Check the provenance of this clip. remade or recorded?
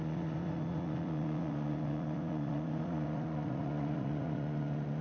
remade